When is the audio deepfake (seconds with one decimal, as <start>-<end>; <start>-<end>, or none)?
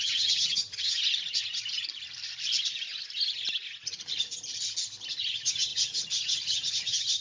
0.0-1.0; 5.3-7.2